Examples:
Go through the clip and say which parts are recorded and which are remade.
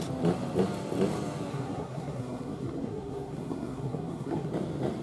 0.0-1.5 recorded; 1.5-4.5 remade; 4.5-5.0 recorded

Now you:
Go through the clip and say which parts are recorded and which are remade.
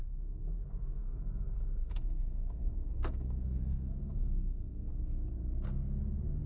0.0-1.0 recorded; 1.0-4.9 remade; 4.9-6.5 recorded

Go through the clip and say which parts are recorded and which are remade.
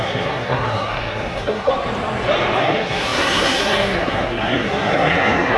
0.0-1.7 remade; 1.7-2.6 recorded; 2.6-5.6 remade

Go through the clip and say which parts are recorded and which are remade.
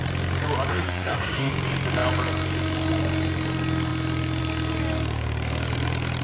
0.0-0.7 recorded; 0.7-1.5 remade; 1.5-6.2 recorded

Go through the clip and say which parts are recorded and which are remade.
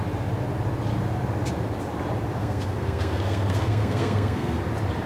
0.0-2.4 recorded; 2.4-4.6 remade; 4.6-5.1 recorded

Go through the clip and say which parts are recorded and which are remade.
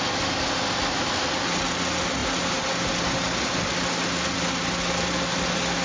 0.0-5.8 recorded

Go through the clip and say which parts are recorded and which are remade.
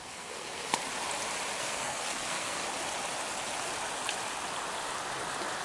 0.0-0.8 remade; 0.8-1.6 recorded; 1.6-2.6 remade; 2.6-5.6 recorded